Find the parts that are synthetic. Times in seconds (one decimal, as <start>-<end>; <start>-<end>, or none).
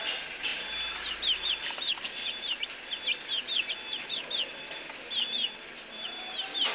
none